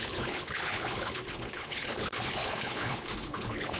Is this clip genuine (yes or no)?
no